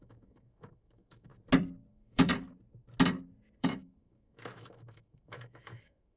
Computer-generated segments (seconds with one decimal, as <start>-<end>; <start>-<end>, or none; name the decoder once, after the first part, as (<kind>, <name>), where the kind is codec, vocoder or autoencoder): 0.0-1.3 (autoencoder, DAC-VAE); 1.9-2.3; 3.6-6.2